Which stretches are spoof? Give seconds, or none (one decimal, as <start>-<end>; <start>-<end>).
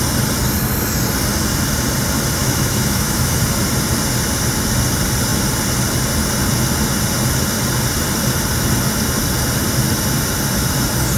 2.4-3.4